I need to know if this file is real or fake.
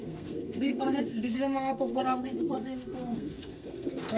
fake